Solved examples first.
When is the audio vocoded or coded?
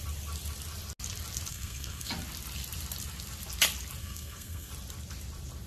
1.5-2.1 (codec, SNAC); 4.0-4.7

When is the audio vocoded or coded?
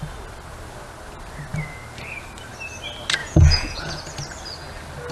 3.2-4.0 (vocoder, Vocos)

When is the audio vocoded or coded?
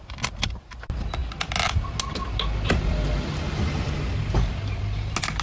none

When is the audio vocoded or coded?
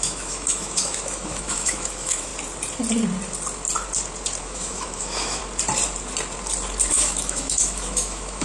0.0-2.3 (autoencoder, DAC-VAE); 4.4-5.4; 6.9-8.4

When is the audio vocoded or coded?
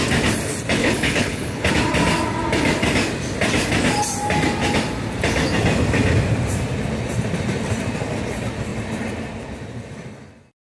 0.8-1.7 (codec, HILCodec)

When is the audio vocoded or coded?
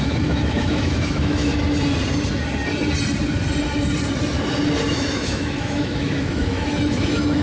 0.0-1.5 (autoencoder, DAC-VAE); 4.9-7.4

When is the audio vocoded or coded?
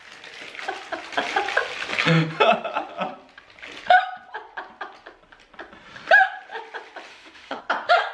7.1-7.6 (autoencoder, DAC-VAE)